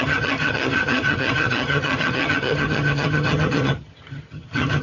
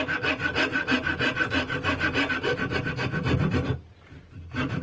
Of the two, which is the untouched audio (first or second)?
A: second